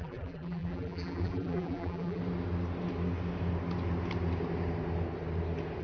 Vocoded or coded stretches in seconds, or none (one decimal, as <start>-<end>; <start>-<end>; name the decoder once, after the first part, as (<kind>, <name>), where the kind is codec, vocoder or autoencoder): 0.0-2.2 (vocoder, BigVGAN v2)